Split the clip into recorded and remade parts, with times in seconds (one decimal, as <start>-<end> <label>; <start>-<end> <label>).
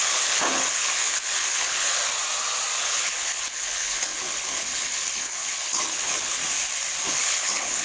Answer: 0.0-2.0 remade; 2.0-2.8 recorded; 2.8-6.4 remade; 6.4-7.0 recorded; 7.0-7.8 remade